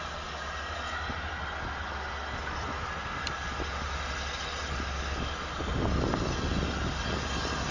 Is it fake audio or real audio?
real